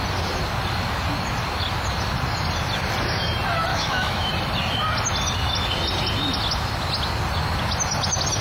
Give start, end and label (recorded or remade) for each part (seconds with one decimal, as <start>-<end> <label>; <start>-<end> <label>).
0.0-3.7 recorded; 3.7-4.3 remade; 4.3-8.4 recorded